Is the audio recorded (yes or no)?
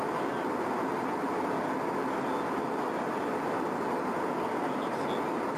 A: yes